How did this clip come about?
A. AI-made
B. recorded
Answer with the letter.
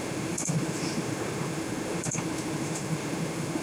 A